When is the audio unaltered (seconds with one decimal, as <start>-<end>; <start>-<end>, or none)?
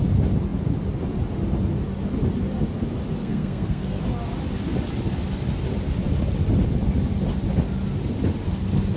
0.0-3.2; 4.0-9.0